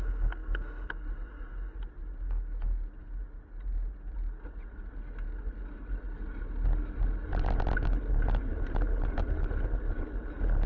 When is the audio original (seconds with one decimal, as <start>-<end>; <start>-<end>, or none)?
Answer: 0.0-10.7